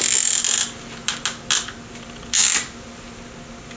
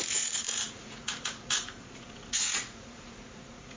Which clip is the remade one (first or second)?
second